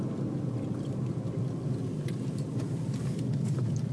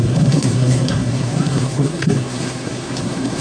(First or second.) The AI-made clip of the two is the second